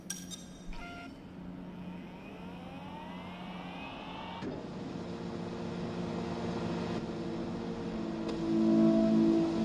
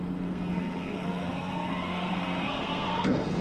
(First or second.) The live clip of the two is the first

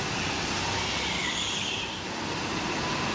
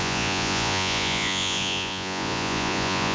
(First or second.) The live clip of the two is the first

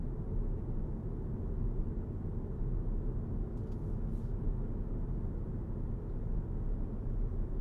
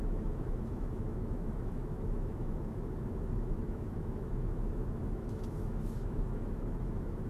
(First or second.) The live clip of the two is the first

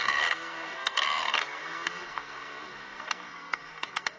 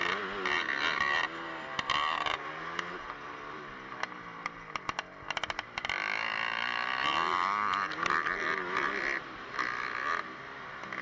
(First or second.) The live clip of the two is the second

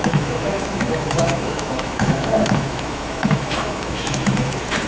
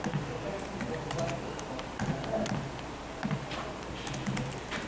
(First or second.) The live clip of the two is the second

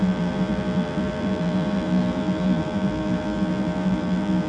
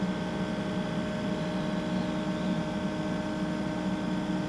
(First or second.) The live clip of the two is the second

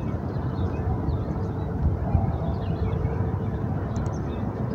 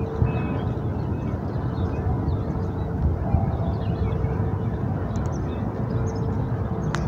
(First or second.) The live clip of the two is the second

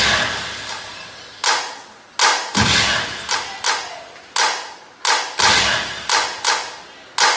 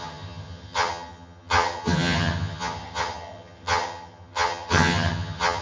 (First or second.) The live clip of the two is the first